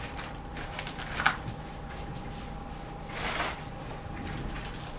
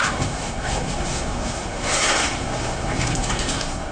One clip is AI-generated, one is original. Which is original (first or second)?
first